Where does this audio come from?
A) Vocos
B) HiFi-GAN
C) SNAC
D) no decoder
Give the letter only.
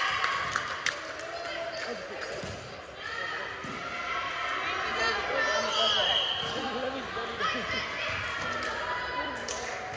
D